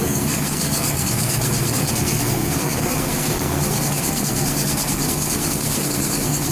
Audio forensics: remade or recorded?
remade